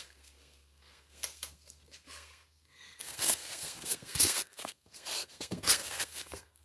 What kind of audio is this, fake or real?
fake